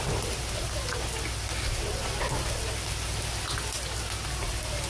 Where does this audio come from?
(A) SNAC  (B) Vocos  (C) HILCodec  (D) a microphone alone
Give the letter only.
D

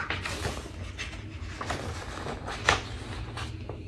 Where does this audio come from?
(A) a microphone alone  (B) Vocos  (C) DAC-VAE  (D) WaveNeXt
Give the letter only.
A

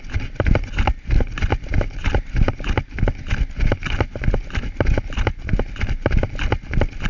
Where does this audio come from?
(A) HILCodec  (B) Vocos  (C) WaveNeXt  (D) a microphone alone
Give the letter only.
D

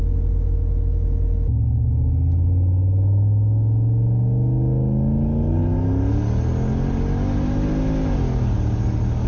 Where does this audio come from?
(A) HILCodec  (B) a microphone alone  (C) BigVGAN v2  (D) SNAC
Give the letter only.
B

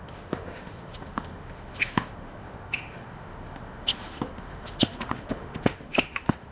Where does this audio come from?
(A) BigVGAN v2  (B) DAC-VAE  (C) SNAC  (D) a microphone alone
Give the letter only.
B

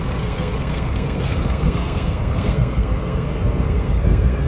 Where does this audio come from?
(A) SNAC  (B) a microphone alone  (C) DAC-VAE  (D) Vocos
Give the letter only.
A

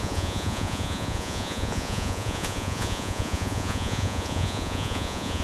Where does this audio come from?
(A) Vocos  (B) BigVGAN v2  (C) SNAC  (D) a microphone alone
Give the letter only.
A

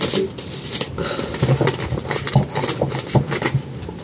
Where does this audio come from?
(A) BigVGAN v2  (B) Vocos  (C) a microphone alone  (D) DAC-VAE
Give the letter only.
C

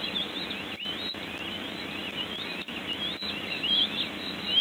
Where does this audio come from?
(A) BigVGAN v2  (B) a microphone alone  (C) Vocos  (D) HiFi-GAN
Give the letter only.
B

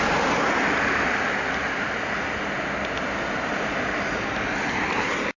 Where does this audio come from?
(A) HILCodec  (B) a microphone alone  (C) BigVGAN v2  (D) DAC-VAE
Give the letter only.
B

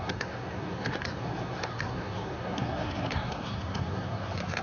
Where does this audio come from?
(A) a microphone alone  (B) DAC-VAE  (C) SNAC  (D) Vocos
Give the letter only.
C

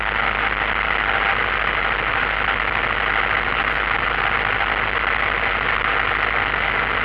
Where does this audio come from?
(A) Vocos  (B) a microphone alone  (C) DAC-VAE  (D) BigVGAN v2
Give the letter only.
B